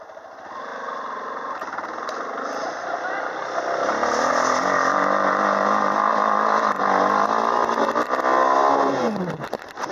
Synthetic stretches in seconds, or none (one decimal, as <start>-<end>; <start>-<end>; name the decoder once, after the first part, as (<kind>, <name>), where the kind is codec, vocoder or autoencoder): 0.7-4.3 (vocoder, BigVGAN v2)